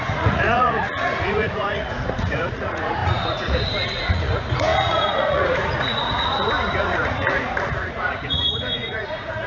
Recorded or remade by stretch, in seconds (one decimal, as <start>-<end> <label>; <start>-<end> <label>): 0.0-9.5 remade